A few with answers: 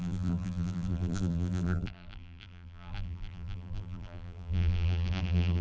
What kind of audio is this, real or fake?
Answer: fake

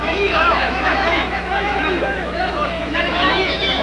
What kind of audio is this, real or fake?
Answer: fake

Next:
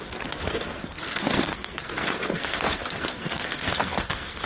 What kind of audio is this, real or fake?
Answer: fake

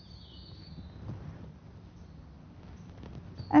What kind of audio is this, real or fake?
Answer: real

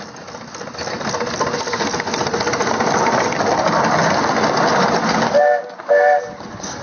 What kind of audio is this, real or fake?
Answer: real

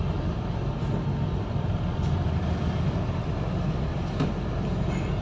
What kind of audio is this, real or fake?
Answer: fake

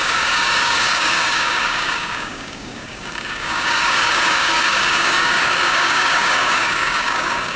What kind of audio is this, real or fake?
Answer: fake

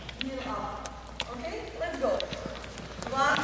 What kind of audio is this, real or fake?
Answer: real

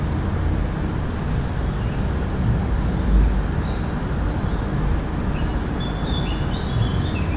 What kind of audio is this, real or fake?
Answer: real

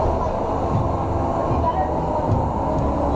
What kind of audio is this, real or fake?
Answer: real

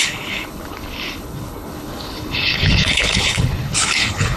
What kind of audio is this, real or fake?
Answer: fake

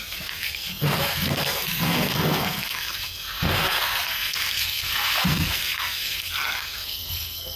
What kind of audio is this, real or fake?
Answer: fake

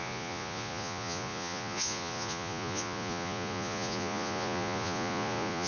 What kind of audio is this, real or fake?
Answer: fake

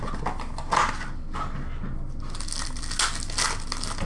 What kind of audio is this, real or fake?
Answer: real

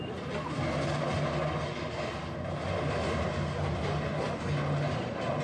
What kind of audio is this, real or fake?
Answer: real